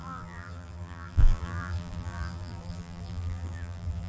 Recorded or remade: remade